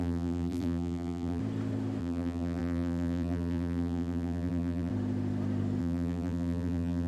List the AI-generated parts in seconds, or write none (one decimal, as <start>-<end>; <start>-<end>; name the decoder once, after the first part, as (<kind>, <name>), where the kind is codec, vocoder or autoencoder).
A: 0.0-1.4 (vocoder, BigVGAN v2); 2.0-4.9; 5.8-7.1